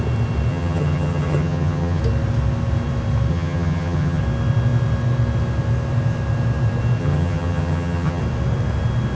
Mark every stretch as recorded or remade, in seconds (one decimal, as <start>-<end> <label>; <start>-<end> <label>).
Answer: 0.0-0.5 recorded; 0.5-2.0 remade; 2.0-3.3 recorded; 3.3-4.2 remade; 4.2-7.0 recorded; 7.0-8.2 remade; 8.2-9.2 recorded